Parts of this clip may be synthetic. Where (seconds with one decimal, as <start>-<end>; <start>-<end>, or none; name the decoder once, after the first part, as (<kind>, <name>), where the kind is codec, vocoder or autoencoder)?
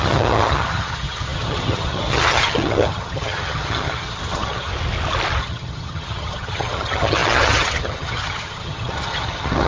0.0-4.7 (vocoder, HiFi-GAN); 5.4-9.7